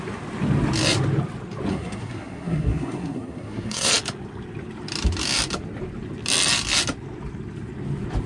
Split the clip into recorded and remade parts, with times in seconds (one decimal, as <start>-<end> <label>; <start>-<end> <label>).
0.0-1.7 recorded; 1.7-3.9 remade; 3.9-8.3 recorded